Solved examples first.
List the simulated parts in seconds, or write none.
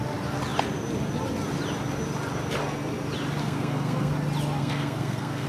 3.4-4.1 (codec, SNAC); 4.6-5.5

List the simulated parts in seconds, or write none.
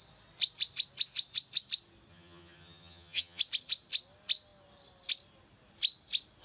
2.1-3.4 (vocoder, HiFi-GAN)